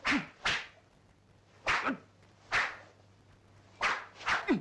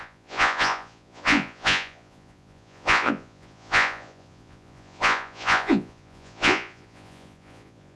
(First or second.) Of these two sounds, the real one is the first